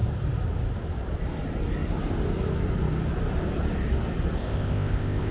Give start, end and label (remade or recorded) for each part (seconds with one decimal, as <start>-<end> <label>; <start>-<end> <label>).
0.0-4.4 recorded; 4.4-5.3 remade